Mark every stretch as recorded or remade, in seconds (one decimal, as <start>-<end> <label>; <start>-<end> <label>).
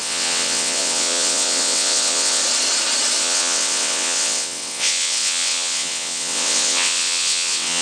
0.0-2.4 remade; 2.4-3.2 recorded; 3.2-7.8 remade